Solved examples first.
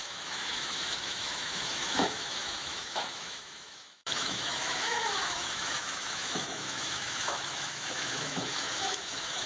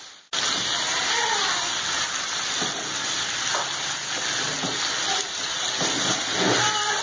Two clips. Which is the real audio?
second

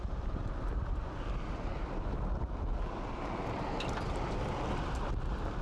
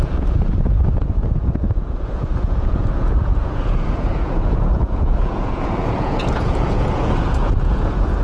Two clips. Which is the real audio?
first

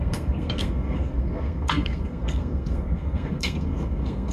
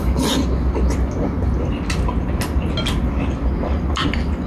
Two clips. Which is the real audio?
second